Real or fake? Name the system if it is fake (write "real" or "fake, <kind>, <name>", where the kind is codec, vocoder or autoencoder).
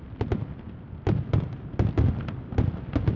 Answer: real